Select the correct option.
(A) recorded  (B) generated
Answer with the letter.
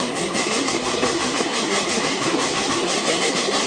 B